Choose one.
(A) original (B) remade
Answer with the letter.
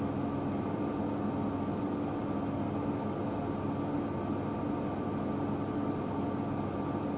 A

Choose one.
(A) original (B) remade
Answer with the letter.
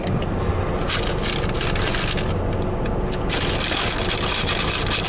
A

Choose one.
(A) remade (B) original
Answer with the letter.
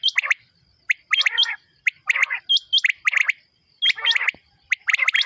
B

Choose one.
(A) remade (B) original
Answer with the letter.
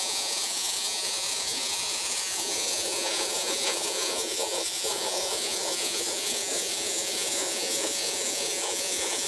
A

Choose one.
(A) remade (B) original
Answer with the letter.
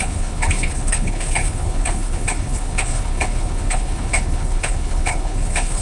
A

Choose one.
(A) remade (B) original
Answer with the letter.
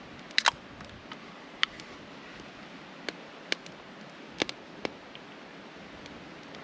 B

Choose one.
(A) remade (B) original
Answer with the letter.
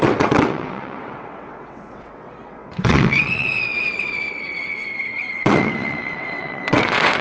A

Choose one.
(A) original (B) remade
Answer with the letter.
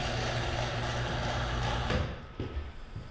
B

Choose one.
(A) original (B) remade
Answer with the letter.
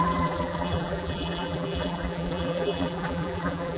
B